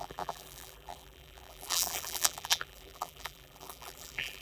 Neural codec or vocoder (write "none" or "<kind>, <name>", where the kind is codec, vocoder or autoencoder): vocoder, BigVGAN v2